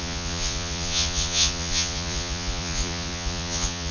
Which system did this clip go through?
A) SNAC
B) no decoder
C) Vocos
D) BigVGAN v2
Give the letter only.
C